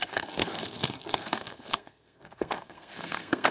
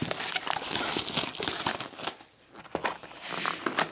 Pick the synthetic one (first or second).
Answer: first